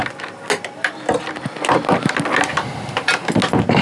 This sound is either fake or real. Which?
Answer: real